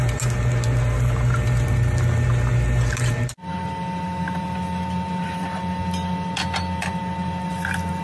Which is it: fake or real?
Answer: real